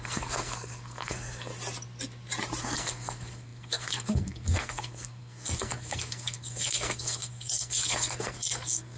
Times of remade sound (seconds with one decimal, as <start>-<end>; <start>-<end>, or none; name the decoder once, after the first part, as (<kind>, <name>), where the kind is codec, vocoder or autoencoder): 0.0-1.5 (codec, SNAC); 2.6-9.0